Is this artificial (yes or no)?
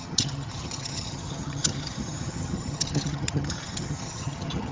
yes